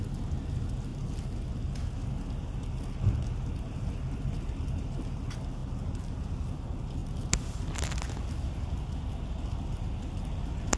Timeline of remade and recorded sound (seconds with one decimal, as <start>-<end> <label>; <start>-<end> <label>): 0.0-10.8 recorded